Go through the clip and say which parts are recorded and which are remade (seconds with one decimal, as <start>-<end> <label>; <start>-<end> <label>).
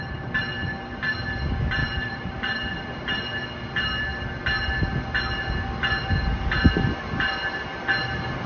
0.0-1.8 recorded; 1.8-2.8 remade; 2.8-8.5 recorded